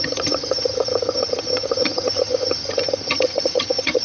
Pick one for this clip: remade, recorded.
remade